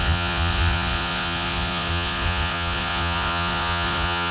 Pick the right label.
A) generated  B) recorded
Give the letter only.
A